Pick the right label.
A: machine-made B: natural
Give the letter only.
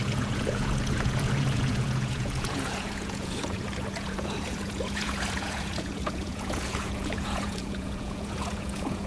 A